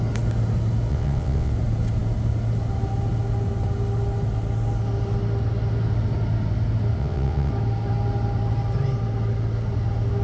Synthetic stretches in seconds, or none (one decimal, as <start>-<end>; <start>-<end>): 0.9-1.5; 7.0-7.5